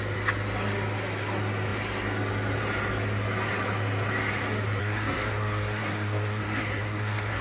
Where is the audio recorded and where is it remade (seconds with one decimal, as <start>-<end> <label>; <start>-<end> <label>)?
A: 0.0-4.8 recorded; 4.8-7.4 remade